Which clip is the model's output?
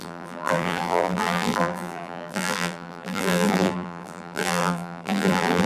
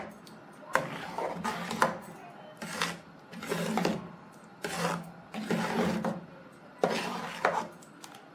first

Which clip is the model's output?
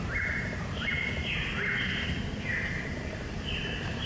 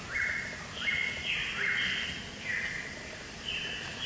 first